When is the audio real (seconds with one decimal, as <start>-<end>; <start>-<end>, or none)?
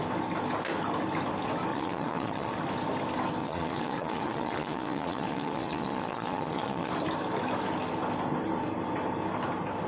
0.0-1.7; 2.5-3.4; 6.9-9.9